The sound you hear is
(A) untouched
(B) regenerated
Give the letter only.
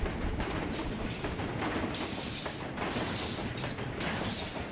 A